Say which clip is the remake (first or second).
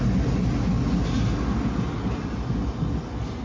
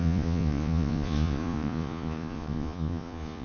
second